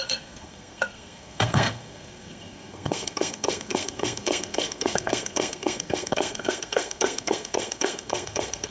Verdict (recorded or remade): remade